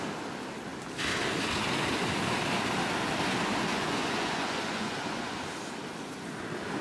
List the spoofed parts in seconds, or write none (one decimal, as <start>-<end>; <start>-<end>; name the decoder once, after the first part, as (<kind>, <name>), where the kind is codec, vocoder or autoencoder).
3.7-5.4 (vocoder, Vocos)